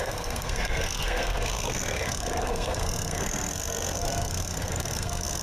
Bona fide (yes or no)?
no